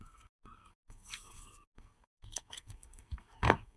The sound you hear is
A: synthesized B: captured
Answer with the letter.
A